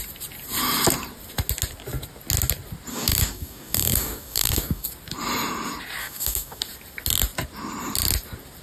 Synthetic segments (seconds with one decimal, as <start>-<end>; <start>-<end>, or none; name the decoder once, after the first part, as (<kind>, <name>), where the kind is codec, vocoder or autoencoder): 2.9-4.9 (codec, DAC); 6.0-6.6